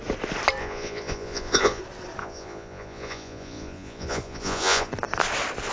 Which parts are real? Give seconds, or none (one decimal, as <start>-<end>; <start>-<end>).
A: 0.0-0.6; 1.8-2.2; 4.9-5.7